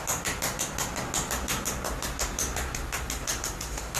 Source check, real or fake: real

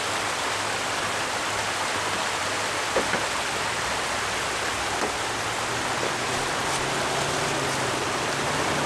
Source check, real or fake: real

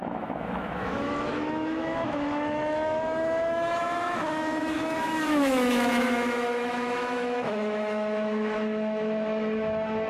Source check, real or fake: fake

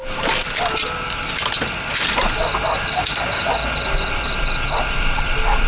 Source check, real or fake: real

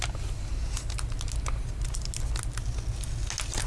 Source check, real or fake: real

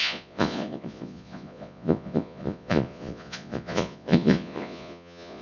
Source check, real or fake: fake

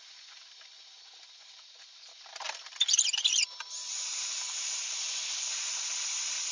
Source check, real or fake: fake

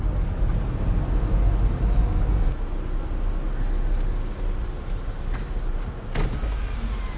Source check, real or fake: real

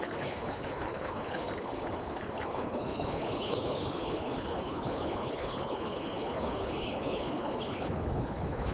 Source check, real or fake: fake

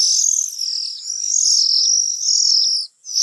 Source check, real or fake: real